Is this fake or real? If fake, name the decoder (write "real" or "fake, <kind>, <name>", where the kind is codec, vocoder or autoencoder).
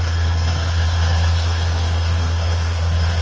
fake, codec, SNAC